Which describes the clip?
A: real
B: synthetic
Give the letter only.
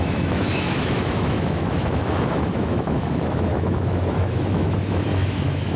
B